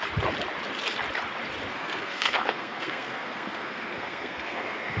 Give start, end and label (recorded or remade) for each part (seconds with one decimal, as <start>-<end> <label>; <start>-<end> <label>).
0.0-1.7 recorded; 1.7-5.0 remade

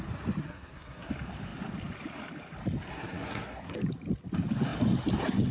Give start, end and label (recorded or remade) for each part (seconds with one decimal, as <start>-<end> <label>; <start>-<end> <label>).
0.0-0.4 recorded; 0.4-1.1 remade; 1.1-2.9 recorded; 2.9-3.8 remade; 3.8-5.5 recorded

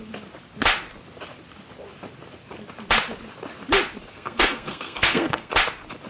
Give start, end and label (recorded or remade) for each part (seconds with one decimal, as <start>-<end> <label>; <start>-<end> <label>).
0.0-4.1 recorded; 4.1-5.5 remade; 5.5-6.1 recorded

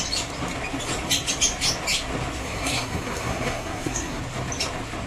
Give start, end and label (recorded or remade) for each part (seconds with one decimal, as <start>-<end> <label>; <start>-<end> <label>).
0.0-2.4 recorded; 2.4-4.2 remade; 4.2-5.1 recorded

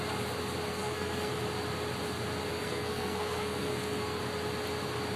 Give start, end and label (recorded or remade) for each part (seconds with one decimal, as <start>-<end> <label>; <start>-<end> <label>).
0.0-0.7 recorded; 0.7-1.4 remade; 1.4-2.5 recorded; 2.5-4.2 remade; 4.2-5.2 recorded

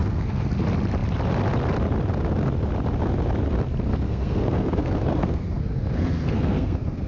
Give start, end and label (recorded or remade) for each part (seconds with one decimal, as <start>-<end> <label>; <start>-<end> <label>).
0.0-0.5 remade; 0.5-3.9 recorded; 3.9-7.1 remade

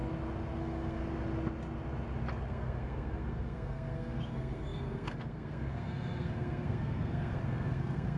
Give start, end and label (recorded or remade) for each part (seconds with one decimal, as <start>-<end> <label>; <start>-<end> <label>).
0.0-0.6 recorded; 0.6-1.0 remade; 1.0-2.5 recorded; 2.5-8.2 remade